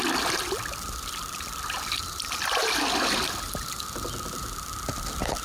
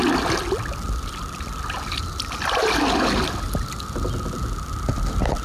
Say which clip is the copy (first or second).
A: first